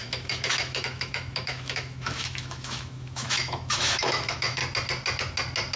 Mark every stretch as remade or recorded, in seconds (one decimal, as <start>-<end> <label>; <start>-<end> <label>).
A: 0.0-4.6 remade; 4.6-5.8 recorded